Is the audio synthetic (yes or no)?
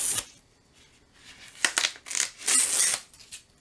no